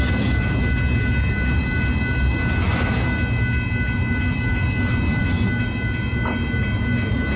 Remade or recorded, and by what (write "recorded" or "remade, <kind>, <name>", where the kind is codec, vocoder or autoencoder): recorded